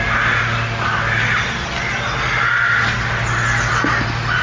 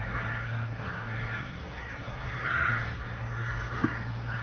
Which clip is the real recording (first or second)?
first